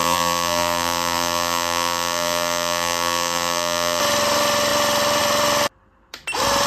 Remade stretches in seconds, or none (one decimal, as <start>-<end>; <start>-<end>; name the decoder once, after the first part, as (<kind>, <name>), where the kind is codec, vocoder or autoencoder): 0.0-4.0 (vocoder, BigVGAN v2)